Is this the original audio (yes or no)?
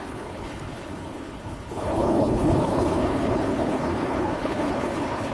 no